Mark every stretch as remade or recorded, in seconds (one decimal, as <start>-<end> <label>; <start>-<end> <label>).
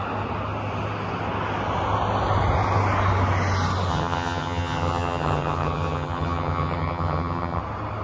0.0-3.9 recorded; 3.9-7.6 remade; 7.6-8.0 recorded